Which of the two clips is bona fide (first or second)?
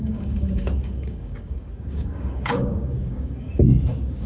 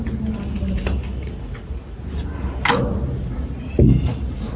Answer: second